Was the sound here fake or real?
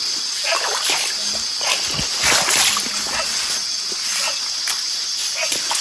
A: real